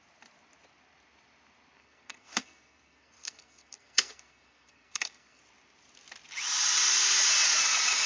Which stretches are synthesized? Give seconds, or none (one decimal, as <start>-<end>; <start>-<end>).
1.8-5.4